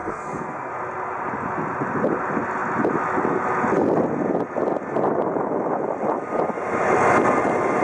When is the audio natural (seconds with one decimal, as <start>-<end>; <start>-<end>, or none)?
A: 0.7-7.8